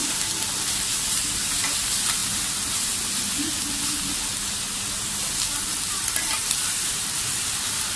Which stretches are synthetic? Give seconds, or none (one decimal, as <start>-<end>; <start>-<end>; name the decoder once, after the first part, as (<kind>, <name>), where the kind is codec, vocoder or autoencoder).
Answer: none